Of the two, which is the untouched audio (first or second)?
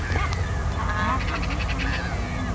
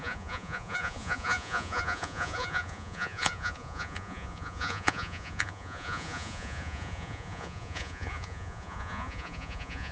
first